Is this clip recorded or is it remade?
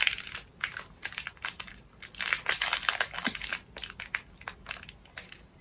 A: recorded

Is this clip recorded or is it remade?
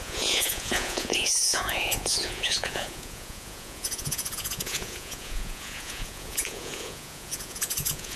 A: remade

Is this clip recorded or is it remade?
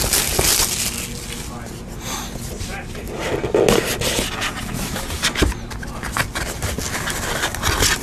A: recorded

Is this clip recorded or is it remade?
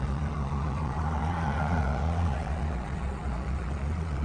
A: remade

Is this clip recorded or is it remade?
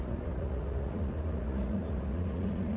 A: remade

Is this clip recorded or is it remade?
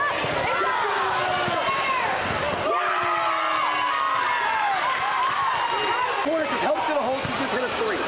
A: recorded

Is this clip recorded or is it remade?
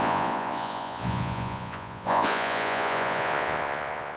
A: remade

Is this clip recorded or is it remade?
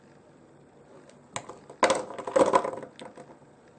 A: recorded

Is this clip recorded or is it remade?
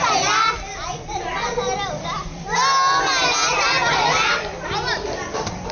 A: recorded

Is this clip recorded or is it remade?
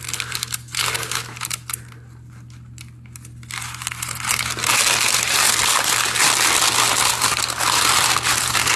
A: recorded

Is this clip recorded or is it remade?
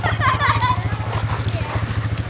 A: recorded